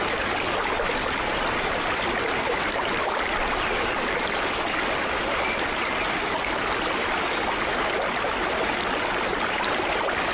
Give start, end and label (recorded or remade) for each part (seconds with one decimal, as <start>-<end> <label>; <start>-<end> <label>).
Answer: 0.0-10.3 recorded